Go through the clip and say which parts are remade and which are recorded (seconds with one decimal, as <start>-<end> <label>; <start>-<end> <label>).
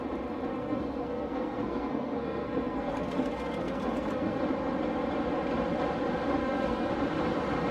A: 0.0-0.5 recorded; 0.5-4.4 remade; 4.4-6.4 recorded; 6.4-6.9 remade; 6.9-7.7 recorded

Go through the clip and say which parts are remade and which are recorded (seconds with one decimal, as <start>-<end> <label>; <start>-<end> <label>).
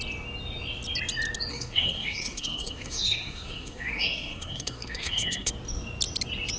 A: 0.0-1.5 recorded; 1.5-5.5 remade; 5.5-6.6 recorded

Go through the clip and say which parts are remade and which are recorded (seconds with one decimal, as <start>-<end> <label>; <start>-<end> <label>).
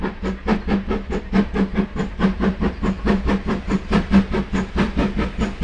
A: 0.0-0.4 recorded; 0.4-1.7 remade; 1.7-2.1 recorded; 2.1-4.1 remade; 4.1-5.6 recorded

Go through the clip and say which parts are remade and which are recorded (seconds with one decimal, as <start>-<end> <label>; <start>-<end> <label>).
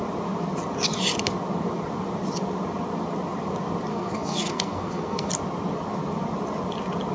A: 0.0-3.9 recorded; 3.9-5.3 remade; 5.3-7.1 recorded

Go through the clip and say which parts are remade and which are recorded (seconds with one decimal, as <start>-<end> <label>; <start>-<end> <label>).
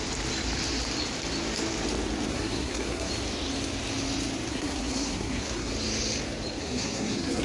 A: 0.0-2.3 recorded; 2.3-3.1 remade; 3.1-4.5 recorded; 4.5-5.7 remade; 5.7-6.6 recorded; 6.6-7.4 remade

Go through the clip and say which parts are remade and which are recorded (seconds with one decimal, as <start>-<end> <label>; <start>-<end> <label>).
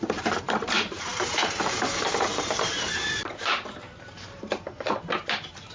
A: 0.0-5.7 remade